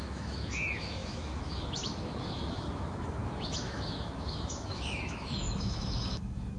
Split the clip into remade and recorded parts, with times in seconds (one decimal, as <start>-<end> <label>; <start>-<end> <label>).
0.0-6.6 remade